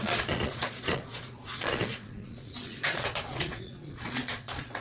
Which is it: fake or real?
fake